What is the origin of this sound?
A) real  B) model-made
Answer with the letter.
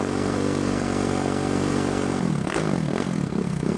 B